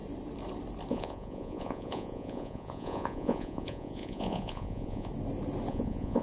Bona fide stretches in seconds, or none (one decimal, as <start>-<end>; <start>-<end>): 0.0-0.9; 5.1-5.7